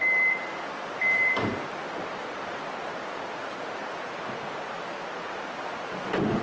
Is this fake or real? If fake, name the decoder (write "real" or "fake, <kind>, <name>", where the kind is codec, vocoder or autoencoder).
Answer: fake, vocoder, BigVGAN v2